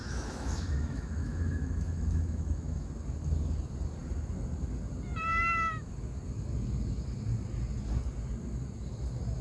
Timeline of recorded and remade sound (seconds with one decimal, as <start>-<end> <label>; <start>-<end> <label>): 0.0-2.9 remade; 2.9-5.3 recorded; 5.3-5.9 remade; 5.9-9.4 recorded